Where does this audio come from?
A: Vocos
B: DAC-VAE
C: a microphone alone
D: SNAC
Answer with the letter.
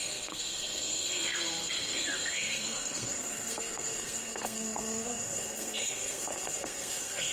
D